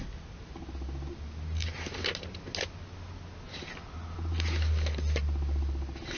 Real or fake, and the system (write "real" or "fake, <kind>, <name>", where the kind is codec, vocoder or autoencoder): real